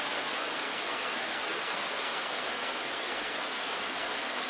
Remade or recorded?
remade